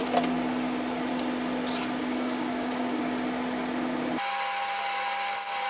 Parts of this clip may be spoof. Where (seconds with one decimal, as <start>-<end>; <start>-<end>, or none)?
2.0-3.0